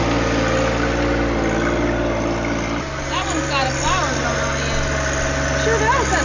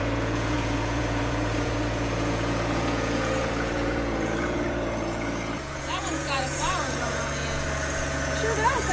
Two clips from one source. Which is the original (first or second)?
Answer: first